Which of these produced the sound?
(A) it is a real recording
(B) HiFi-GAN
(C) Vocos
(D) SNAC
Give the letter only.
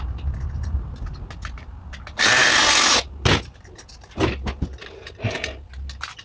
A